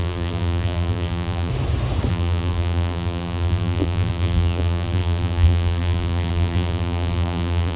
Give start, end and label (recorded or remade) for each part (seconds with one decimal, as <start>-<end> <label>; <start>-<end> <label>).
0.0-1.5 remade; 1.5-2.1 recorded; 2.1-7.8 remade